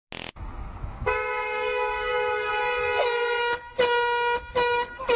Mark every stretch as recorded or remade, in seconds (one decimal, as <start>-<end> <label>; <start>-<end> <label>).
0.0-0.8 recorded; 0.8-2.5 remade; 2.5-5.2 recorded